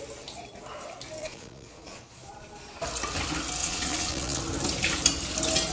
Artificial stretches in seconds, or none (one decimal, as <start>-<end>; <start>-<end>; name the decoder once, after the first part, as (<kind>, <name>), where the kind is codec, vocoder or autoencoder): 1.2-2.3 (vocoder, Vocos); 3.6-4.4

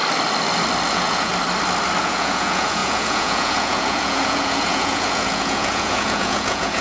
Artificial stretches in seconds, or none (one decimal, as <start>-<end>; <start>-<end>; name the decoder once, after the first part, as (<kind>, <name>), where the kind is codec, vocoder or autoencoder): 0.9-1.3 (vocoder, Vocos); 2.0-6.8

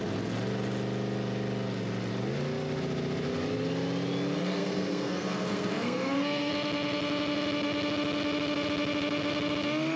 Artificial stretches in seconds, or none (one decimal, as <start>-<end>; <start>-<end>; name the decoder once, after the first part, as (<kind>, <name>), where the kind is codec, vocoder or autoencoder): 4.6-6.5 (codec, SNAC)

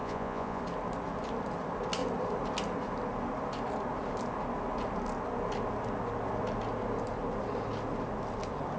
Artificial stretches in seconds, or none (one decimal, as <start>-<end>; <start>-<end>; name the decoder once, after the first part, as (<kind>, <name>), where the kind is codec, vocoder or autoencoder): 0.0-0.6 (vocoder, Vocos)

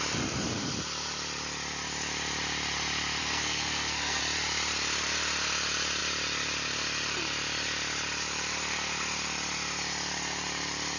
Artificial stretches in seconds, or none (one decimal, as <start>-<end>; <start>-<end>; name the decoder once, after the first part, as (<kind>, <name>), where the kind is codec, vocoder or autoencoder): 3.2-4.2 (codec, SNAC)

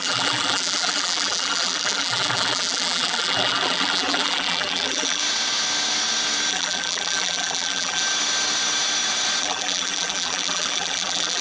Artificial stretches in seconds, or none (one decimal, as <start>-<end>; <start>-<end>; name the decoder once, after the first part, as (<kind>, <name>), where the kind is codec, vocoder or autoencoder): 0.0-5.2 (vocoder, BigVGAN v2); 6.5-8.0; 9.4-11.4